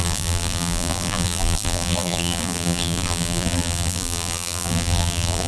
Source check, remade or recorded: remade